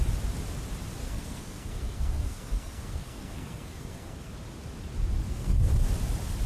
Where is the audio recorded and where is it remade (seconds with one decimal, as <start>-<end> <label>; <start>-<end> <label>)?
0.0-1.0 recorded; 1.0-4.3 remade; 4.3-5.2 recorded; 5.2-5.7 remade; 5.7-6.5 recorded

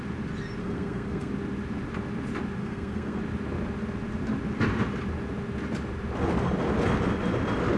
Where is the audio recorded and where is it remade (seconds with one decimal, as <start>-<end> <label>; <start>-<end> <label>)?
0.0-0.6 recorded; 0.6-1.3 remade; 1.3-2.6 recorded; 2.6-3.2 remade; 3.2-7.8 recorded

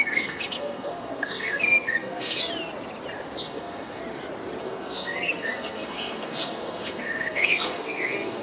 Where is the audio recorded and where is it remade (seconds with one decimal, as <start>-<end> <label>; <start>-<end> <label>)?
0.0-2.5 remade; 2.5-3.4 recorded; 3.4-4.0 remade; 4.0-4.6 recorded; 4.6-8.4 remade

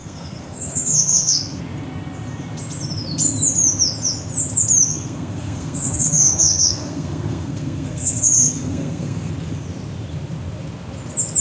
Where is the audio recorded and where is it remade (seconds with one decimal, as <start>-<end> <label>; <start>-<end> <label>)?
0.0-1.6 remade; 1.6-4.9 recorded; 4.9-9.3 remade; 9.3-11.4 recorded

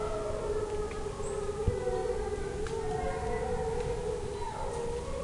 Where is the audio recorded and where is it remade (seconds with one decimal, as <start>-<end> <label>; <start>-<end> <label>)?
0.0-5.2 recorded

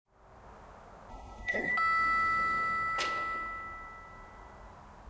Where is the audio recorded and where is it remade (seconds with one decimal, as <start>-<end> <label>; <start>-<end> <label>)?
0.0-1.1 recorded; 1.1-1.7 remade; 1.7-5.1 recorded